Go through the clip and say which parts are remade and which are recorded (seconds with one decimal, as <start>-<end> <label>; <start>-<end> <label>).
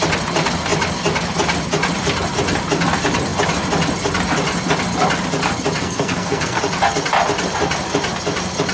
0.0-5.8 recorded; 5.8-6.6 remade; 6.6-8.7 recorded